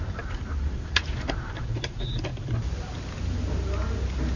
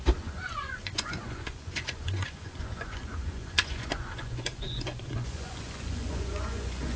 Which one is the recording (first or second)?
first